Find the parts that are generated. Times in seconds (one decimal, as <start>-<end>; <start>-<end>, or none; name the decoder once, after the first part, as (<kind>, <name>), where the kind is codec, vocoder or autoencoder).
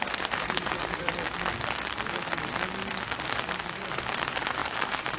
0.0-1.1 (vocoder, BigVGAN v2); 3.4-5.2